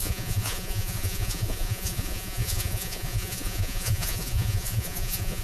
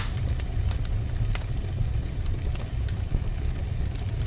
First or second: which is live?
second